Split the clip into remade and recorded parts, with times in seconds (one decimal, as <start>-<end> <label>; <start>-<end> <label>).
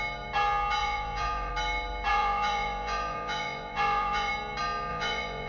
0.0-0.8 recorded; 0.8-1.5 remade; 1.5-2.1 recorded; 2.1-4.3 remade; 4.3-4.9 recorded; 4.9-5.5 remade